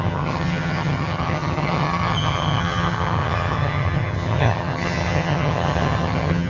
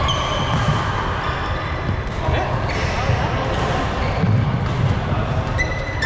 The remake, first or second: first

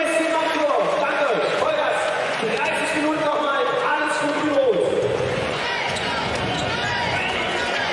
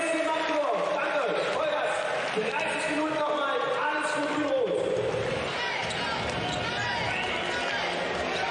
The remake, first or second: first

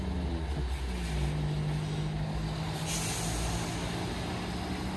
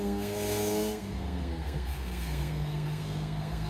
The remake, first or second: second